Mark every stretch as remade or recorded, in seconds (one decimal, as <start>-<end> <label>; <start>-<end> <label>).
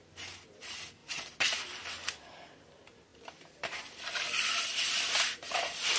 0.0-1.0 recorded; 1.0-1.9 remade; 1.9-3.1 recorded; 3.1-4.5 remade; 4.5-6.0 recorded